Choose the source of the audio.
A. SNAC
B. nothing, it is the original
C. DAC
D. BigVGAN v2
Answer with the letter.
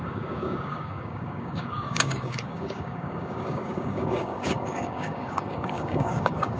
C